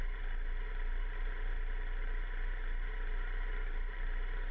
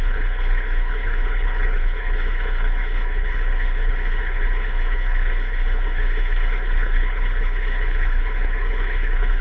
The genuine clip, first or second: first